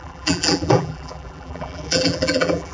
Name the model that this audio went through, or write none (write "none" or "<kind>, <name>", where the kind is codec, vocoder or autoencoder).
vocoder, BigVGAN v2